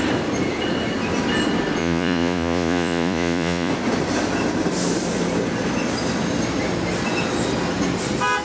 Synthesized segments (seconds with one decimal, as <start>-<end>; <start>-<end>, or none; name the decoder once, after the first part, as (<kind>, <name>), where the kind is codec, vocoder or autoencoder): 1.8-3.7 (vocoder, Vocos)